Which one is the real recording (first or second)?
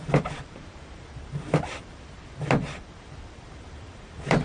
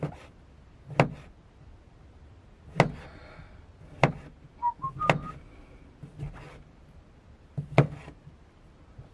second